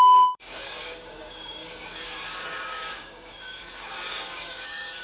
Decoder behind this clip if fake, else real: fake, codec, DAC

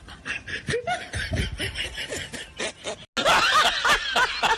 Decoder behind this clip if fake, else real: real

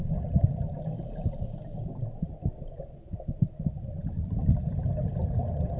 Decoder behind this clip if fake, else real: real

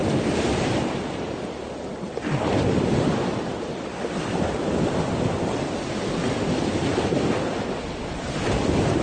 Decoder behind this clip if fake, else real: real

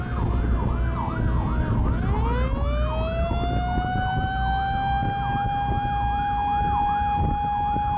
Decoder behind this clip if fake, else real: real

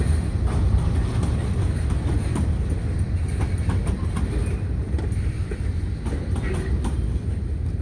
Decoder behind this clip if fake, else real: real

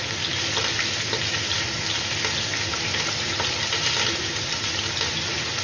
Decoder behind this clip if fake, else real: real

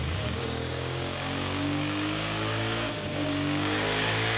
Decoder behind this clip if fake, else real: fake, codec, DAC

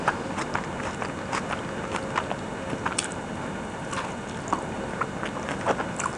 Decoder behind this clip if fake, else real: real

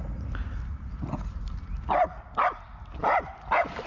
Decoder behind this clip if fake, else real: real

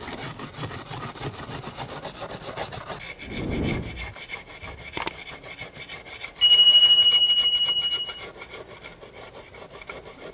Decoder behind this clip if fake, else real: real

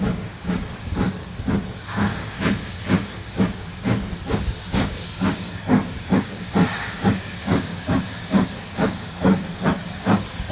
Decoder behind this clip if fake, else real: fake, codec, DAC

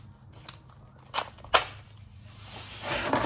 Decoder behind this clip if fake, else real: real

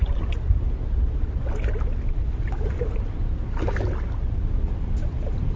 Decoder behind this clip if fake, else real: real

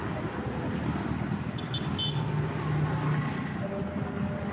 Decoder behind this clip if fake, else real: real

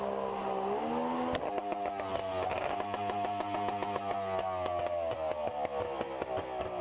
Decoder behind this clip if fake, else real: real